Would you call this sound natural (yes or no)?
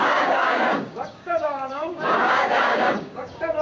no